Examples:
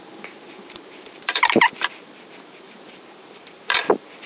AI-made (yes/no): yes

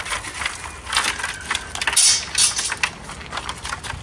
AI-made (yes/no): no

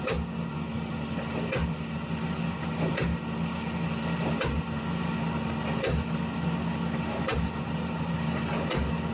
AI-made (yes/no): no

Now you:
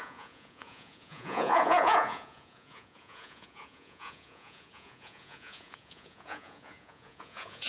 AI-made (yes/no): yes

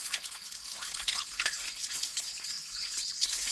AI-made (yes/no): yes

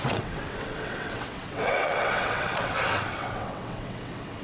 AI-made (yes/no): yes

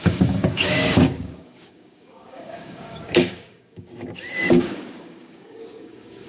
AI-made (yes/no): yes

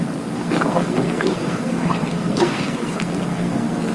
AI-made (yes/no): yes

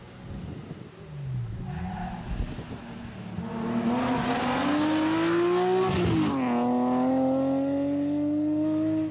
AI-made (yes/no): no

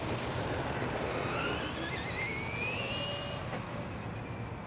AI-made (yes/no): no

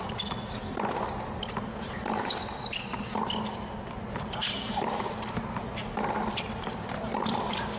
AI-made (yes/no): no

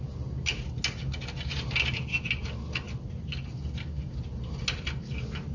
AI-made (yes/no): no